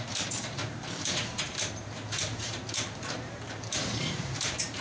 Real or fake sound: fake